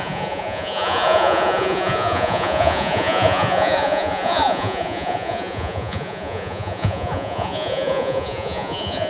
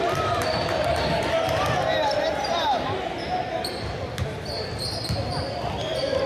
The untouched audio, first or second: second